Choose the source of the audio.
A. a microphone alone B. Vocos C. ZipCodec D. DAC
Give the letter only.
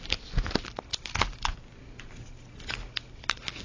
A